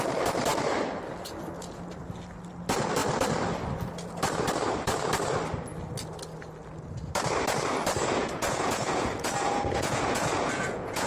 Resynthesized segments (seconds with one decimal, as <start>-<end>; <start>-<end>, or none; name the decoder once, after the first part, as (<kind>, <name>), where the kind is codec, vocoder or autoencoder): 8.2-11.1 (vocoder, Vocos)